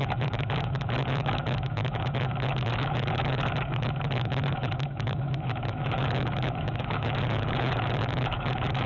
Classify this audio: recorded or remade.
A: remade